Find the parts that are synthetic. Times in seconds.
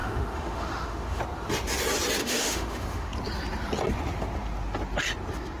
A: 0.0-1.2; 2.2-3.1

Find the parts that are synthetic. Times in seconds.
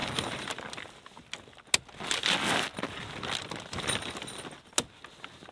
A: none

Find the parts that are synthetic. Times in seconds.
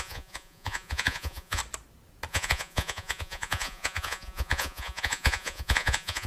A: 0.0-1.6; 2.3-6.3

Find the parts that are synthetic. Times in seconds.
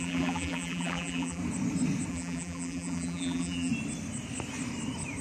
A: 0.0-1.4; 2.1-3.7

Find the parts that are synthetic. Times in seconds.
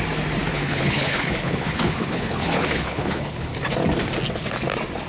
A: 0.5-3.5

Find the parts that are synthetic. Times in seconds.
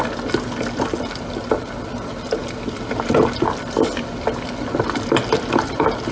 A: 2.4-3.2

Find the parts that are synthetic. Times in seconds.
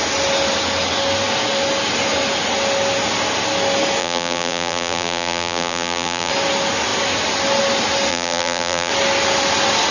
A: 4.0-6.3; 8.1-8.9